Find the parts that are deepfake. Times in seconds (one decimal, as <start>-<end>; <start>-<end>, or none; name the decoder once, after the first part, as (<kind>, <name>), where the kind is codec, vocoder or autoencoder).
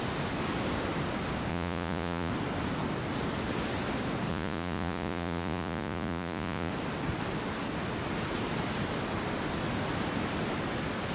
1.5-2.3 (vocoder, Vocos); 4.3-6.7